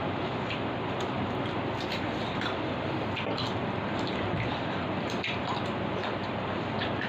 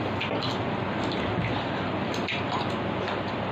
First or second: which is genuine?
second